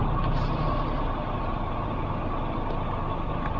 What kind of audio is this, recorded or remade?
recorded